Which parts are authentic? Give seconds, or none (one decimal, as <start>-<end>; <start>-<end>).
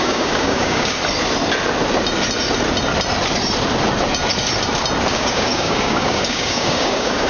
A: 1.0-5.1